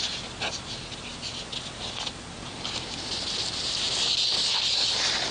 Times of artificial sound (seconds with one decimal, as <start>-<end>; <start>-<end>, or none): none